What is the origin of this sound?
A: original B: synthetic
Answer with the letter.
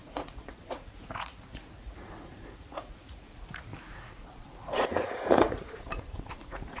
B